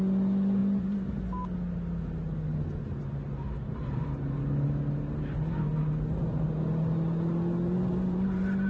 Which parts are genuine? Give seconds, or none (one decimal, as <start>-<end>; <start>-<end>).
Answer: 0.0-8.7